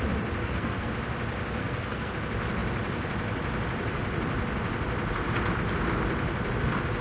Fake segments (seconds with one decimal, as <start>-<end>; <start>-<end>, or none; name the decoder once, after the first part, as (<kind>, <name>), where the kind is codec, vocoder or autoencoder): 0.4-0.9 (codec, SNAC); 1.6-2.1